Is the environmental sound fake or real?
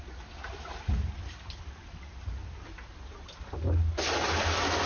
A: real